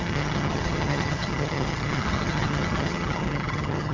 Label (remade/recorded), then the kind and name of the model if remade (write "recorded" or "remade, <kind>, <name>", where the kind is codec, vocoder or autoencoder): remade, vocoder, HiFi-GAN